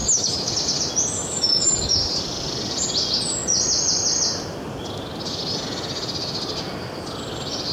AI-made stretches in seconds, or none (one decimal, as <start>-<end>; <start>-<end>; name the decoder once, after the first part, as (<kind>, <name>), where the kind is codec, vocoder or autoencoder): 0.0-0.5 (autoencoder, DAC-VAE); 1.2-2.0